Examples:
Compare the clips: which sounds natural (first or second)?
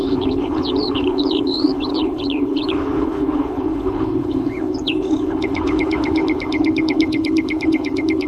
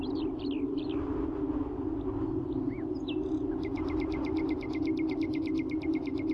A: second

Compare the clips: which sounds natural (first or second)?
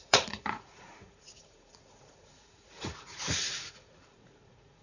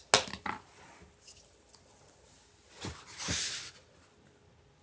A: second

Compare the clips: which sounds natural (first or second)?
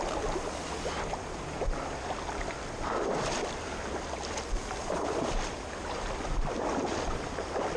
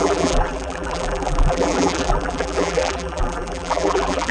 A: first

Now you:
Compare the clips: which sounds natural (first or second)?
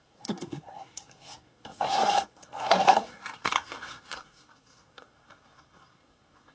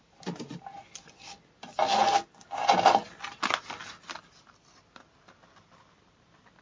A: second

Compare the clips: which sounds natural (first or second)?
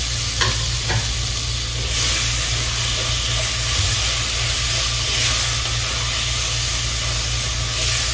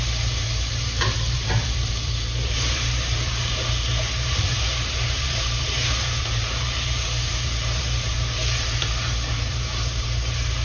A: first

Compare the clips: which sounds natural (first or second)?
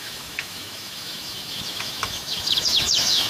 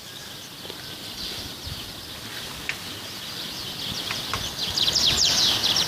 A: second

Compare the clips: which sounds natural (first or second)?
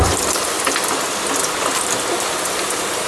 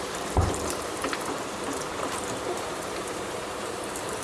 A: first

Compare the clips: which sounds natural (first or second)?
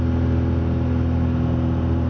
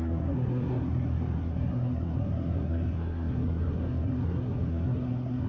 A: first